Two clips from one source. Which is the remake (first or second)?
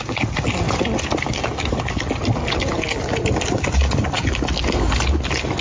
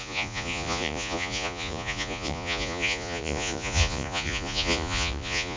second